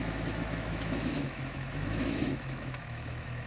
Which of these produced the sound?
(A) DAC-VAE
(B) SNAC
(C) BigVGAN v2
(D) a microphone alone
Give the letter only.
A